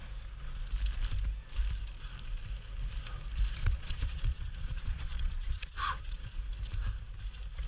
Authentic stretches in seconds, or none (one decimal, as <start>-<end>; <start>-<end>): 0.0-3.6; 6.4-7.7